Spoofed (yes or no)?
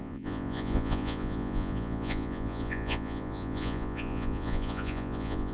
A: yes